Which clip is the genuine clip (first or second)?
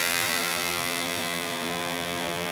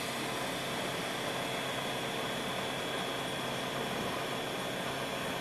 second